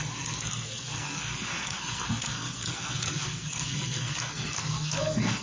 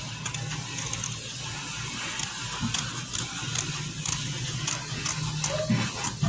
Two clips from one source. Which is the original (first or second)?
second